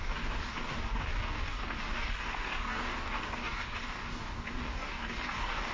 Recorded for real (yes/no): no